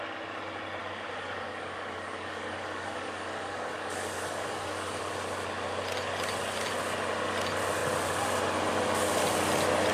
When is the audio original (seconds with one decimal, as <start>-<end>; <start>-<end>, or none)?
0.0-0.8; 5.0-9.9